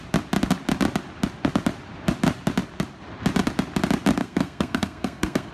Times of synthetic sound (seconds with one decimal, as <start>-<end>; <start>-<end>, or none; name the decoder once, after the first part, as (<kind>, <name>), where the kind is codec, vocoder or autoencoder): 4.2-5.5 (codec, SNAC)